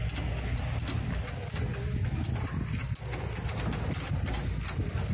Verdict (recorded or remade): recorded